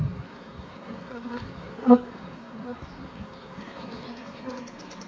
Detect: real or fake fake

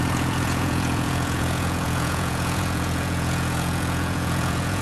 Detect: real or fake fake